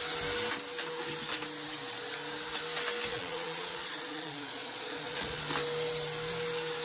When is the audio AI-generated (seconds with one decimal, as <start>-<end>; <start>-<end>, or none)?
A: 3.1-5.4